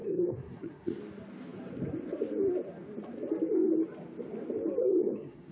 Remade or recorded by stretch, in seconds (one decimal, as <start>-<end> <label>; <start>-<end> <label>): 0.0-1.0 remade; 1.0-4.8 recorded; 4.8-5.5 remade